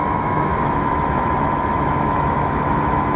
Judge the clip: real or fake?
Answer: fake